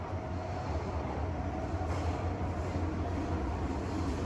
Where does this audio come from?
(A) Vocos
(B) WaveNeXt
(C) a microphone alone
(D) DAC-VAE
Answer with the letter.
C